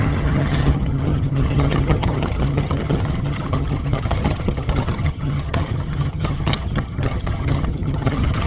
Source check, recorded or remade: remade